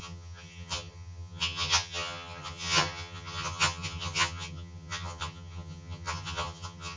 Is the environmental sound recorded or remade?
remade